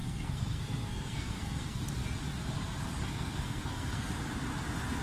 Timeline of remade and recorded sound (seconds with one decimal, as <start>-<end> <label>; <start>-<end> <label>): 0.0-1.8 remade; 1.8-3.0 recorded; 3.0-4.1 remade; 4.1-5.0 recorded